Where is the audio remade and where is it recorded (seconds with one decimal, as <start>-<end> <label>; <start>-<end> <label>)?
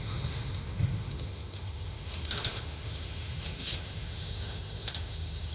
0.0-5.5 remade